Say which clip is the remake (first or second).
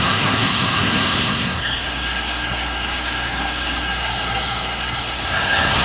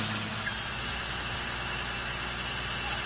first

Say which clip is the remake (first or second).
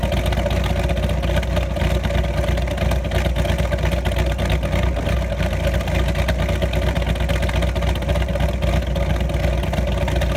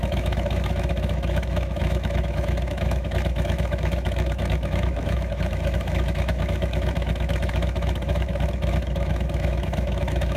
second